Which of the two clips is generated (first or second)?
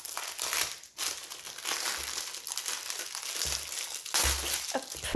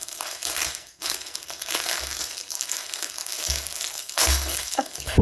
second